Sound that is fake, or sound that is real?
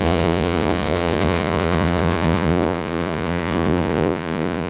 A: fake